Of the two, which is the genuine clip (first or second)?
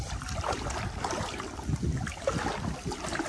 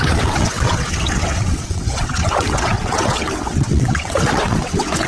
first